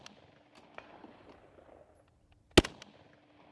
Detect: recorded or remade recorded